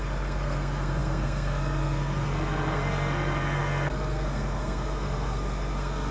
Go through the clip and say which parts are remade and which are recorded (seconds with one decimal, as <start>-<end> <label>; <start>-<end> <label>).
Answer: 0.0-6.1 remade